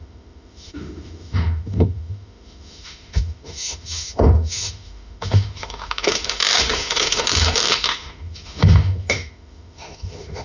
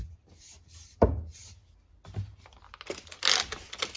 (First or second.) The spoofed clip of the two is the first